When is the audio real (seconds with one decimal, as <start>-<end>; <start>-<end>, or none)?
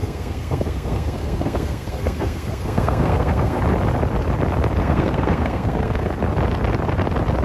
3.6-4.8; 6.1-7.4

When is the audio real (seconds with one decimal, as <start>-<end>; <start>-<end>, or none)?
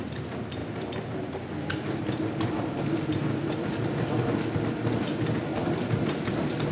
0.0-0.6; 4.6-5.5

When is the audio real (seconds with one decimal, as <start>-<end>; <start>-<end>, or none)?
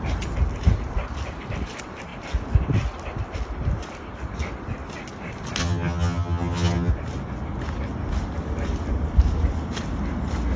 0.0-5.6; 6.9-10.6